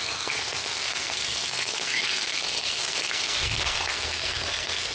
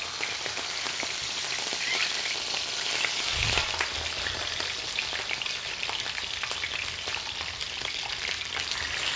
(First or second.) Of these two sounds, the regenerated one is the first